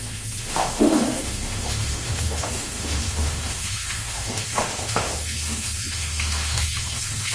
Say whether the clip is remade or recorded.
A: remade